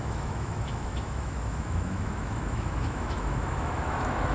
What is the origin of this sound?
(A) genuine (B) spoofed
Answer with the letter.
B